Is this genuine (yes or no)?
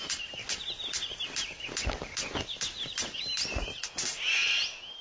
yes